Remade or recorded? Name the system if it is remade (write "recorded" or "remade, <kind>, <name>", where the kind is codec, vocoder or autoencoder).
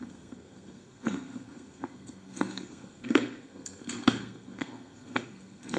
remade, codec, SNAC